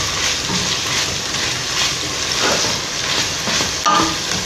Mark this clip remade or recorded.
recorded